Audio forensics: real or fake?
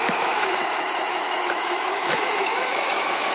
fake